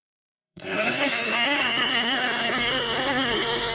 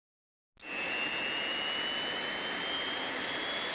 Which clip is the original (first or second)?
second